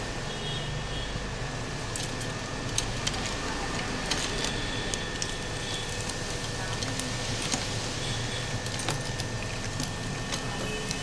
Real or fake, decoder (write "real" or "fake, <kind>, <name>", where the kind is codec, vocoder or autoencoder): real